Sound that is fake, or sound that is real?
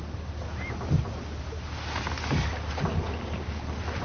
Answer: real